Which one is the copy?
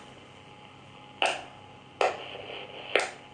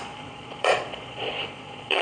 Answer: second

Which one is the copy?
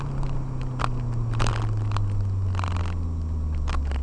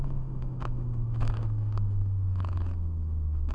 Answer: second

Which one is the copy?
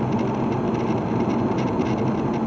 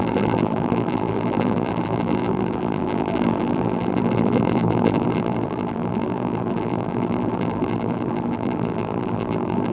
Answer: second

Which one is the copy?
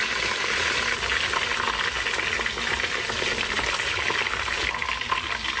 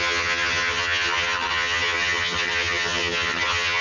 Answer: second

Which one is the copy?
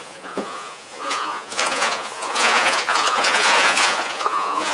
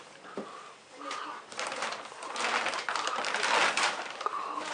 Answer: first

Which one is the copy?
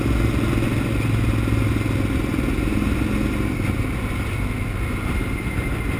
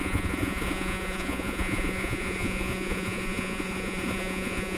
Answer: second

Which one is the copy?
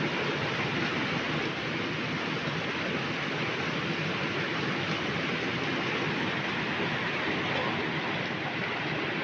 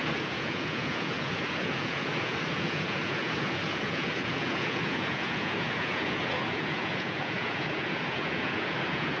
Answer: second